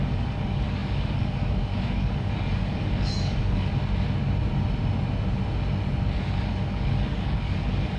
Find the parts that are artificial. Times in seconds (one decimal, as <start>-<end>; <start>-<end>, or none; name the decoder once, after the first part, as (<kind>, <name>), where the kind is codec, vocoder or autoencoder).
0.0-3.7 (codec, DAC); 6.2-8.0